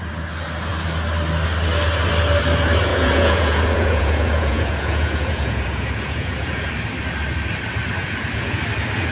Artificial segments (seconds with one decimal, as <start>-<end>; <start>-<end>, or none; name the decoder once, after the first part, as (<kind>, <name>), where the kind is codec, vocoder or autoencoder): 2.9-6.7 (vocoder, Vocos); 8.0-8.6